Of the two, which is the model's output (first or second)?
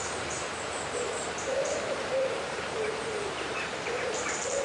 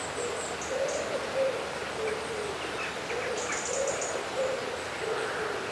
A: first